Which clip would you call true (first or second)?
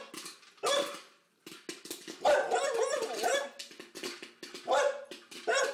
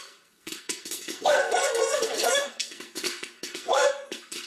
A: first